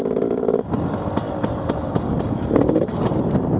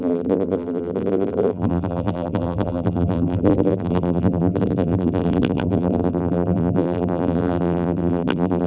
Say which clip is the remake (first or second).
second